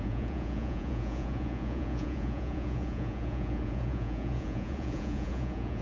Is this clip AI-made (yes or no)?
yes